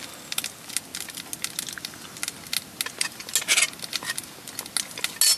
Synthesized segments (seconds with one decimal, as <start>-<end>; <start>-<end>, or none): none